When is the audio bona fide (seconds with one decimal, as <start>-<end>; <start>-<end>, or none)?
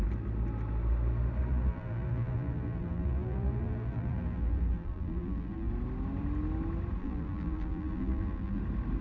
0.0-1.5; 5.7-7.0; 8.6-9.0